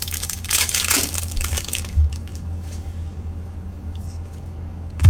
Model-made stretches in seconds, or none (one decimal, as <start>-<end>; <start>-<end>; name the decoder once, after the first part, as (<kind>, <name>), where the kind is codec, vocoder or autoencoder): 0.0-5.1 (codec, DAC)